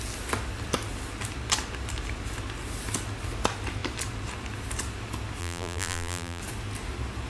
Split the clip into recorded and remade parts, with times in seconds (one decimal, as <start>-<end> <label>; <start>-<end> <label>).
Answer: 0.0-5.4 recorded; 5.4-6.4 remade; 6.4-7.3 recorded